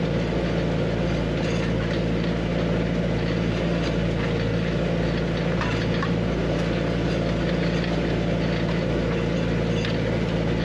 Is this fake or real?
real